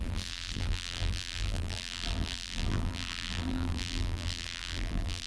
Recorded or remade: remade